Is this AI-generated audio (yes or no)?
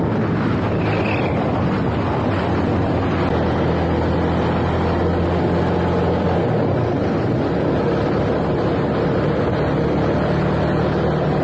no